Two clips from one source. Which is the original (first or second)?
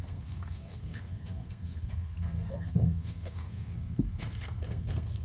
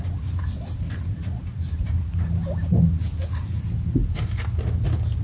second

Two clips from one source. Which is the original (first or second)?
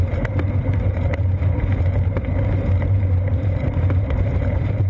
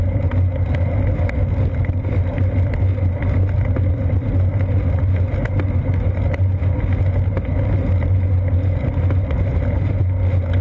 second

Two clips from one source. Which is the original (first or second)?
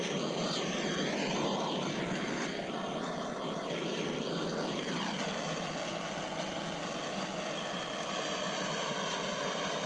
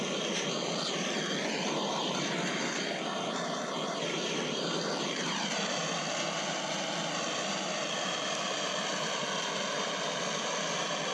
first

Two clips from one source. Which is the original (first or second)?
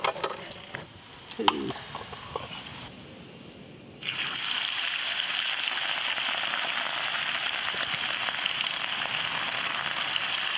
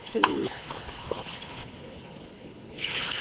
first